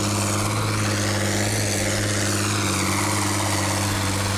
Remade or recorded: recorded